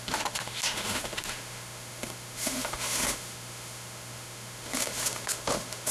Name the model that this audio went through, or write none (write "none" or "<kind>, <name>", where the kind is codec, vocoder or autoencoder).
autoencoder, DAC-VAE